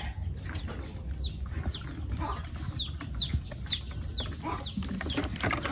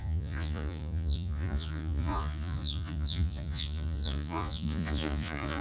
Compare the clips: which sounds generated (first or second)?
second